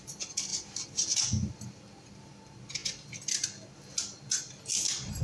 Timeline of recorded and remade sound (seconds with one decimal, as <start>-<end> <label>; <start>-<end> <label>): 0.0-0.5 recorded; 0.5-1.2 remade; 1.2-5.2 recorded